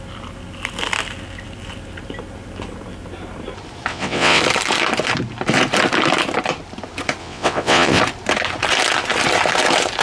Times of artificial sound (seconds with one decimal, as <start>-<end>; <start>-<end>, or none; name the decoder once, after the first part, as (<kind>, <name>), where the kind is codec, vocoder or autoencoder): 3.9-4.4 (vocoder, WaveNeXt); 7.2-8.0